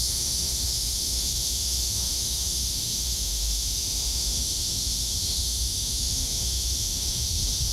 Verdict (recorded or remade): remade